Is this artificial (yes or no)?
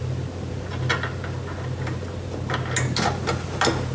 no